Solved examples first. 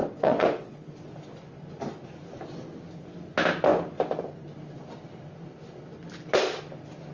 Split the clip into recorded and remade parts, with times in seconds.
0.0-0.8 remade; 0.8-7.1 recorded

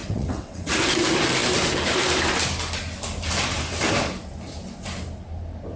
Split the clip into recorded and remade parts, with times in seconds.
0.0-0.7 remade; 0.7-5.8 recorded

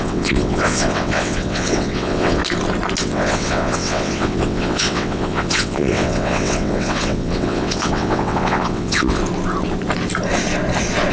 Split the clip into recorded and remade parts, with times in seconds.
0.0-2.4 remade; 2.4-3.0 recorded; 3.0-9.2 remade; 9.2-11.1 recorded

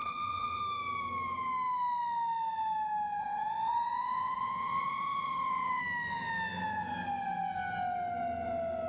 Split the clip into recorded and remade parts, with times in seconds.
0.0-0.6 remade; 0.6-3.2 recorded; 3.2-5.8 remade; 5.8-8.9 recorded

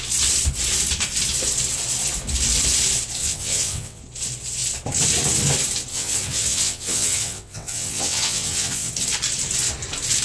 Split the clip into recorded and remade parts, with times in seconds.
0.0-3.2 recorded; 3.2-4.0 remade; 4.0-5.9 recorded; 5.9-8.9 remade; 8.9-10.2 recorded

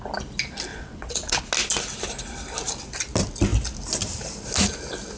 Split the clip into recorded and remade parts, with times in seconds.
0.0-0.7 recorded; 0.7-1.4 remade; 1.4-5.2 recorded